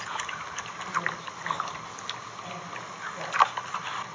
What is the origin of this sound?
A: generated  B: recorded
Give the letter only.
B